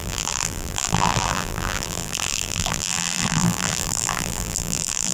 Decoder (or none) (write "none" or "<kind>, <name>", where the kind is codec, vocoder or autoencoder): vocoder, BigVGAN v2